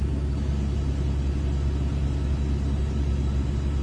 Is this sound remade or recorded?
recorded